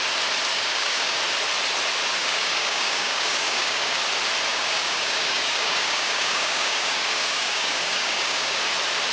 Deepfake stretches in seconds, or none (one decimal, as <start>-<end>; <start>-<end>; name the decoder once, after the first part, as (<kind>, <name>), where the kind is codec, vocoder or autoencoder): 0.5-1.2 (codec, DAC); 2.2-4.0; 4.5-8.6